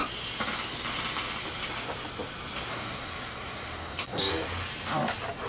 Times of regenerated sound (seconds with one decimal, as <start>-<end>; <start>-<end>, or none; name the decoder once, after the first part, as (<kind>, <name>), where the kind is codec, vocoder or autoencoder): 2.7-4.2 (codec, SNAC)